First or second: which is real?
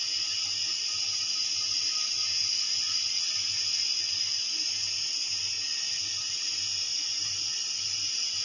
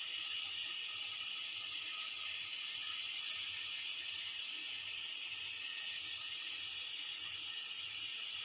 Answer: first